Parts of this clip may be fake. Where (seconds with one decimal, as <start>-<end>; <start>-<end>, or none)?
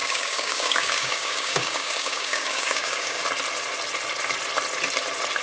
0.0-3.2